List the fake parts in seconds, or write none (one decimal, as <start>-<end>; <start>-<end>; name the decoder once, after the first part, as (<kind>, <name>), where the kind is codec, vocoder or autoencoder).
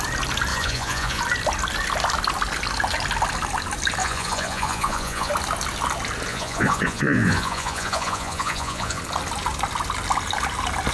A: 0.5-1.2 (vocoder, Vocos); 4.0-5.3; 6.3-9.0